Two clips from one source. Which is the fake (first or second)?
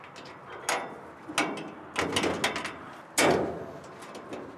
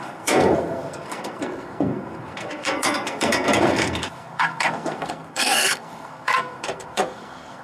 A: second